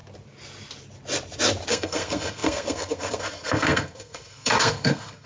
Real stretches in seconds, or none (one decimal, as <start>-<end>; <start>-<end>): 0.0-1.7